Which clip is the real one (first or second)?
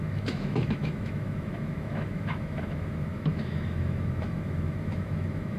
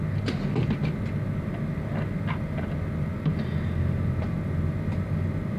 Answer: second